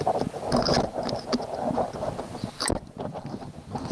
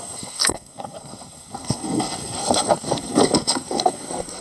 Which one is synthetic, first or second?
second